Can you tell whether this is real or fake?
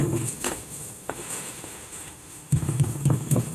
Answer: fake